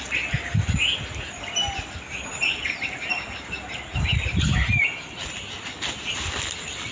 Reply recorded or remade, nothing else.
recorded